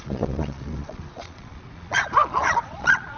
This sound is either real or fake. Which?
fake